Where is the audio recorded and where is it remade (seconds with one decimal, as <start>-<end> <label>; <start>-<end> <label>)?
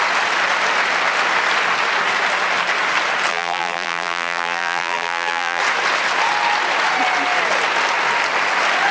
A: 0.0-3.3 recorded; 3.3-5.6 remade; 5.6-8.9 recorded